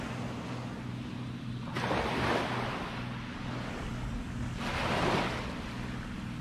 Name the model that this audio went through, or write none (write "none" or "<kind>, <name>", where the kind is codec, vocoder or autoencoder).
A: none